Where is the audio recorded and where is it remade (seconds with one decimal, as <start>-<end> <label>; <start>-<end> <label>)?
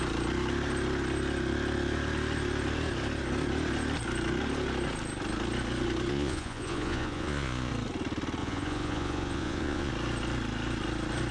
0.0-6.1 recorded; 6.1-7.7 remade; 7.7-8.4 recorded; 8.4-9.9 remade; 9.9-11.3 recorded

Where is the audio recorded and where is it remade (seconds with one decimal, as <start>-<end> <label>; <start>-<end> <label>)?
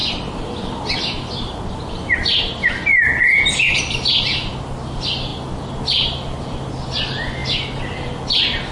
0.0-8.7 recorded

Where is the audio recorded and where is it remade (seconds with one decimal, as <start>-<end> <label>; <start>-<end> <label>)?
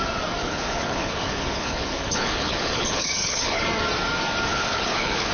0.0-0.4 recorded; 0.4-3.6 remade; 3.6-4.5 recorded; 4.5-5.3 remade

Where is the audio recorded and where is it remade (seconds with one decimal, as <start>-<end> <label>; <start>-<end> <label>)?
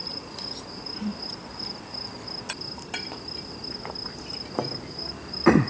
0.0-0.6 remade; 0.6-5.7 recorded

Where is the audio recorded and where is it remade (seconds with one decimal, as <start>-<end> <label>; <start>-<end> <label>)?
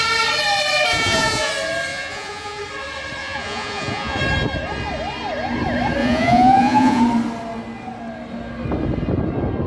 0.0-0.9 recorded; 0.9-1.5 remade; 1.5-1.9 recorded; 1.9-2.6 remade; 2.6-3.2 recorded; 3.2-4.2 remade; 4.2-6.0 recorded; 6.0-7.0 remade; 7.0-9.7 recorded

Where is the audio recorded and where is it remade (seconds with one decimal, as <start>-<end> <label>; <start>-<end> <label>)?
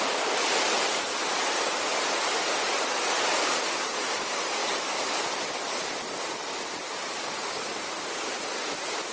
0.0-4.6 recorded; 4.6-5.9 remade; 5.9-9.1 recorded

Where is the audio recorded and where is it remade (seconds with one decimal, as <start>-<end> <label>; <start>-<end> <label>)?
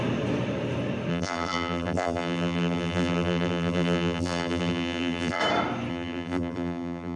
0.0-1.1 recorded; 1.1-5.4 remade; 5.4-5.9 recorded; 5.9-7.2 remade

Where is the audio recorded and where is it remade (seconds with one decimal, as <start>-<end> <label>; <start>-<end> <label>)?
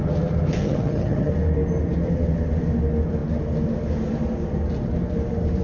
0.0-0.6 recorded; 0.6-1.3 remade; 1.3-5.6 recorded